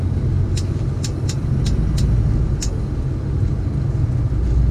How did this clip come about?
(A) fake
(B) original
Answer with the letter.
B